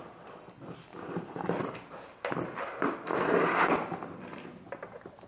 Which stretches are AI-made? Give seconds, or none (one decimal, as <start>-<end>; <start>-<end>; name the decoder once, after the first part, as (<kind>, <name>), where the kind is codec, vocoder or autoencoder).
none